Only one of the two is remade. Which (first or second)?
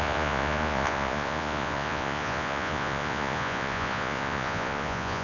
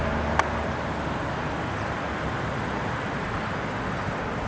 first